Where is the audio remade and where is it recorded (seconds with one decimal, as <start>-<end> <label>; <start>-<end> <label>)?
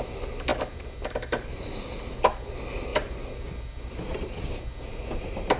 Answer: 0.0-5.6 recorded